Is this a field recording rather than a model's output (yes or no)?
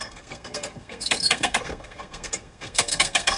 no